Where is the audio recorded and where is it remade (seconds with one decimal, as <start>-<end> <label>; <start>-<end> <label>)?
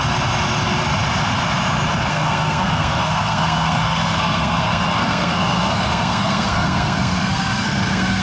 0.0-2.1 recorded; 2.1-8.2 remade